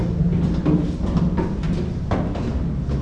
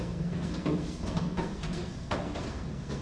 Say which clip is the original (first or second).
first